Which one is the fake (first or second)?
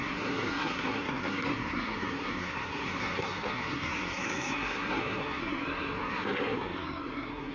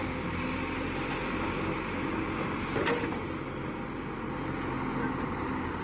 first